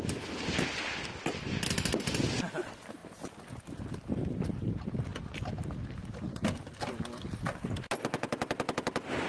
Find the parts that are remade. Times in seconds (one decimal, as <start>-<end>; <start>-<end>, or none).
none